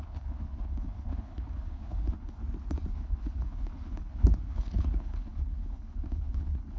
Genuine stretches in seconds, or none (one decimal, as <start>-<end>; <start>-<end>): 2.4-2.9